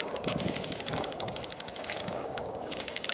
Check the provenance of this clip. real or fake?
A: fake